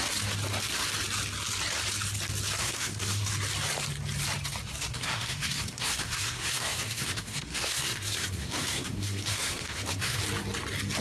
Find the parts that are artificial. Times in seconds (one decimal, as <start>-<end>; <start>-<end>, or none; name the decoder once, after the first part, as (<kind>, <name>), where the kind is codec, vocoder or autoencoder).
2.6-3.3 (codec, SNAC); 4.9-10.2